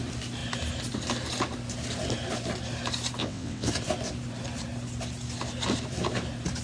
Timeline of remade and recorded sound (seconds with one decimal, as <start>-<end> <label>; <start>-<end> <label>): 0.0-3.2 recorded; 3.2-3.7 remade; 3.7-6.6 recorded